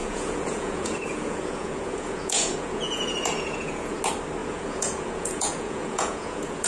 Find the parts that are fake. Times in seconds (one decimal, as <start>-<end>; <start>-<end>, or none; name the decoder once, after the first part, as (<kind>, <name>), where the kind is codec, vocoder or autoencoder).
0.0-4.0 (vocoder, Vocos); 4.4-6.7